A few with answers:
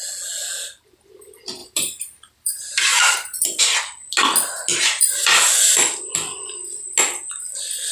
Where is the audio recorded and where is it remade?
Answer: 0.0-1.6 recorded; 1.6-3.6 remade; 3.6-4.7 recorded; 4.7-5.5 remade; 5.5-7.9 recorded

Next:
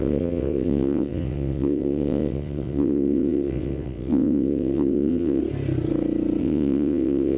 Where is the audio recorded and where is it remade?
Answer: 0.0-5.4 remade; 5.4-6.4 recorded; 6.4-7.4 remade

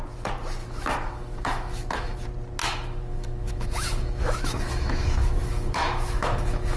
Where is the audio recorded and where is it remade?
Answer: 0.0-0.6 recorded; 0.6-2.2 remade; 2.2-2.6 recorded; 2.6-6.8 remade